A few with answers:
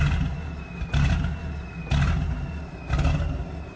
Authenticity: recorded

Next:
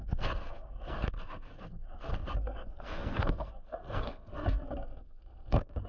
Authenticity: remade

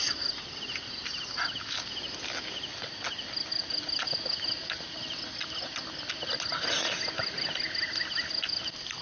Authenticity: recorded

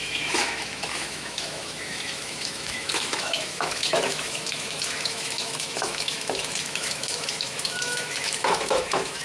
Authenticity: remade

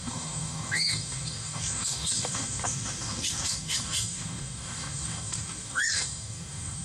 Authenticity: remade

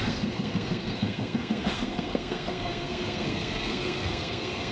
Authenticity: remade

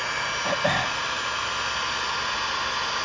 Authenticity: recorded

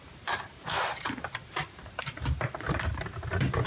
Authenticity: remade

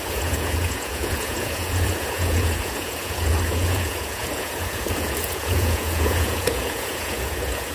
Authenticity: remade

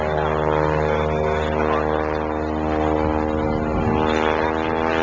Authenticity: recorded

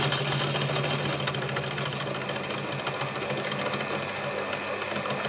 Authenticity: recorded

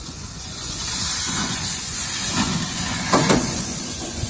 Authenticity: remade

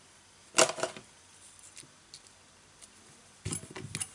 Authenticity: recorded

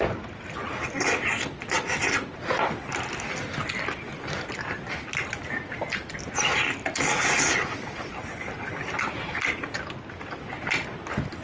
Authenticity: recorded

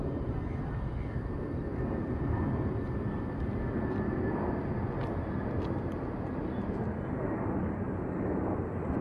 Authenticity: recorded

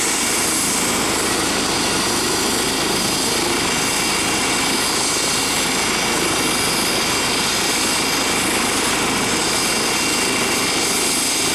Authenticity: recorded